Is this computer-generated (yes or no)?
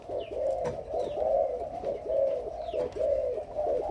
no